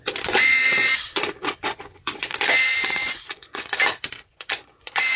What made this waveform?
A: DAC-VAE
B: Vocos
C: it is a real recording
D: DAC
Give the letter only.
B